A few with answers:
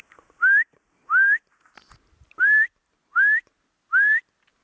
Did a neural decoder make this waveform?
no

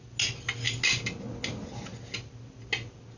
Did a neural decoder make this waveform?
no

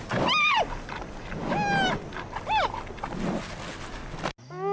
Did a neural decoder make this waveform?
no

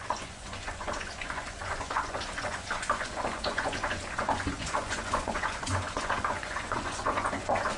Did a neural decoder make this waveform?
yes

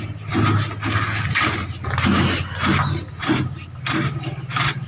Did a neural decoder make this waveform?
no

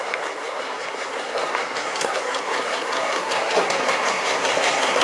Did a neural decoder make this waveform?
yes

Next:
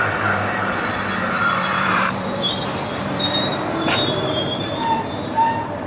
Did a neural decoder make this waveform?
yes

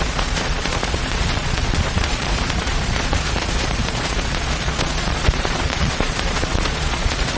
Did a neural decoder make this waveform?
yes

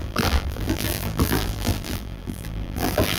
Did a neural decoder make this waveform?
yes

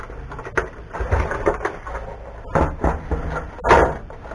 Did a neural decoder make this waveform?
no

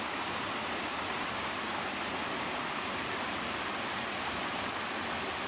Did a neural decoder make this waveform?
no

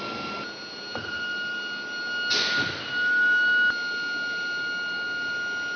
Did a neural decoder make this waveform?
no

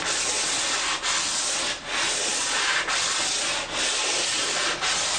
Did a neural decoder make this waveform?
no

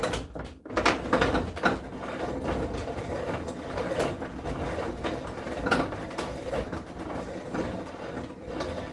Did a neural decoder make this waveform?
no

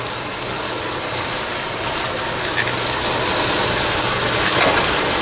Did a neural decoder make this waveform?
no